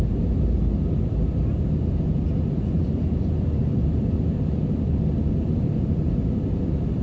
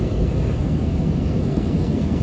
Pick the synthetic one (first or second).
second